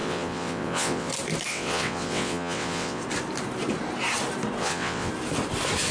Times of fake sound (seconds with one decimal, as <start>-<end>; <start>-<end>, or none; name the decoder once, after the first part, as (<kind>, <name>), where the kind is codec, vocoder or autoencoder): 0.0-1.1 (vocoder, WaveNeXt); 1.5-3.0; 4.6-5.1